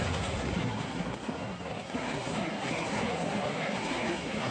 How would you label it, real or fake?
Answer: fake